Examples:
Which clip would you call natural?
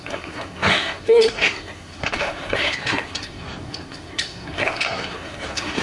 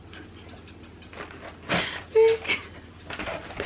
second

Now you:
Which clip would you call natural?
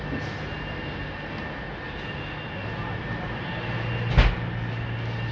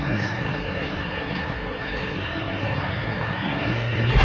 first